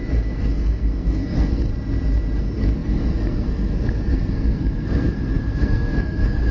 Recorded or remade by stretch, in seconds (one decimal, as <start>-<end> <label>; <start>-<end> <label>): 0.0-1.7 remade; 1.7-2.4 recorded; 2.4-6.5 remade